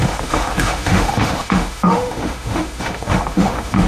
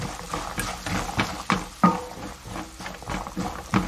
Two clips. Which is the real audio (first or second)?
second